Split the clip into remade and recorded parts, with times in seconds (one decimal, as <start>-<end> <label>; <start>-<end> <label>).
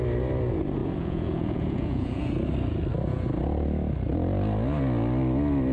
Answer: 0.0-0.8 recorded; 0.8-2.2 remade; 2.2-5.7 recorded